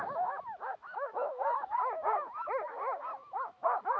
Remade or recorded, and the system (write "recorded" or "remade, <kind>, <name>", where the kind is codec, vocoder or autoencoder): remade, autoencoder, DAC-VAE